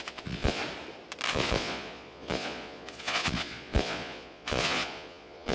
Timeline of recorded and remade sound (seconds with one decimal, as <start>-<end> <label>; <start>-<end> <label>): 0.0-0.6 remade; 0.6-1.3 recorded; 1.3-5.5 remade